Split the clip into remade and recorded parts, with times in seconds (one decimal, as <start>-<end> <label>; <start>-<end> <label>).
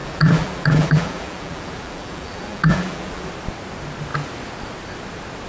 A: 0.0-3.3 remade; 3.3-5.5 recorded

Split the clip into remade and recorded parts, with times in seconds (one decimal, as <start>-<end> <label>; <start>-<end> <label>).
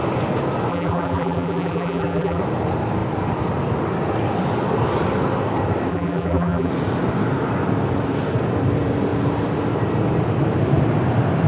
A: 0.0-0.7 recorded; 0.7-2.4 remade; 2.4-5.9 recorded; 5.9-6.7 remade; 6.7-11.5 recorded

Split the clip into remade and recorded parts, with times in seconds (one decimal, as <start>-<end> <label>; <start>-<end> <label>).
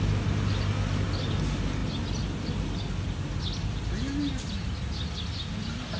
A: 0.0-6.0 recorded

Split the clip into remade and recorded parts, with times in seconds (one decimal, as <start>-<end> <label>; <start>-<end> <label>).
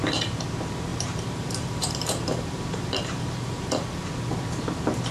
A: 0.0-0.9 recorded; 0.9-4.0 remade; 4.0-5.1 recorded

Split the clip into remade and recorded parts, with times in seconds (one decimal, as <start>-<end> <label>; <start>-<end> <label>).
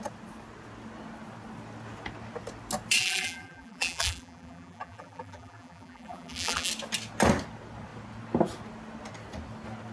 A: 0.0-3.0 recorded; 3.0-6.7 remade; 6.7-9.9 recorded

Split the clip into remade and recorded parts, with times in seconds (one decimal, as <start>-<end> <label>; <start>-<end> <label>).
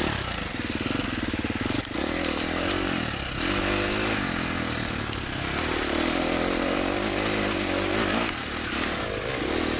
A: 0.0-9.8 recorded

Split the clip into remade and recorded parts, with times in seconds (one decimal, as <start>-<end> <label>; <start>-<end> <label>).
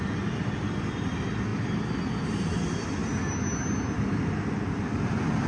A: 0.0-5.5 recorded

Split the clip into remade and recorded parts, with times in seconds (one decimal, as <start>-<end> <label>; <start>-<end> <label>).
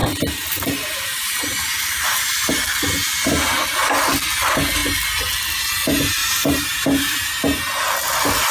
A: 0.0-2.5 remade; 2.5-6.2 recorded; 6.2-7.4 remade; 7.4-8.5 recorded